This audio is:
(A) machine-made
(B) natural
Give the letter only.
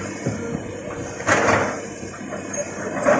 A